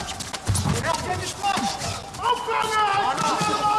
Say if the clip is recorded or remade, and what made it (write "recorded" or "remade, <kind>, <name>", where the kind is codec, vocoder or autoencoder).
recorded